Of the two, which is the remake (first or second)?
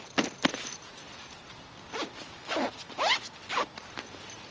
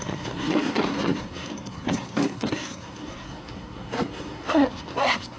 second